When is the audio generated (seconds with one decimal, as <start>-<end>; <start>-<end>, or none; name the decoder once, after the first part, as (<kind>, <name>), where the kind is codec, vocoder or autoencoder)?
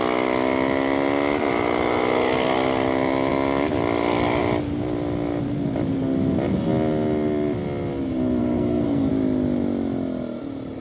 8.4-9.1 (codec, SNAC)